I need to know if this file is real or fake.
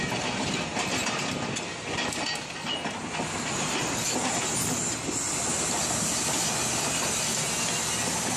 real